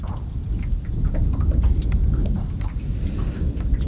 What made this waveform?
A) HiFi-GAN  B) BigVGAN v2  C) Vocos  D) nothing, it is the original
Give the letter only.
D